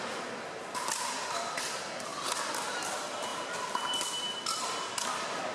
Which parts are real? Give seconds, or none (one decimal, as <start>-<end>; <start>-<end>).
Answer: 0.0-3.3; 3.9-5.5